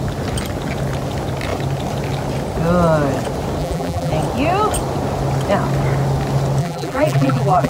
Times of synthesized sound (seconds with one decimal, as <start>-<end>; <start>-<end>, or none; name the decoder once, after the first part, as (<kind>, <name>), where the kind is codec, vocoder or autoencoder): 3.6-4.1 (vocoder, BigVGAN v2); 6.6-7.7